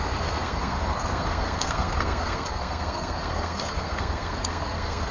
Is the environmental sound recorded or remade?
remade